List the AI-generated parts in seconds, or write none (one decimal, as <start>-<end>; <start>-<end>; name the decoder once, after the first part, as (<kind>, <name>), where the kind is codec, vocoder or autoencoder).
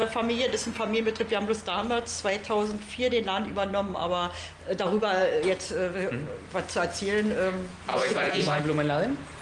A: 7.9-8.6 (vocoder, Vocos)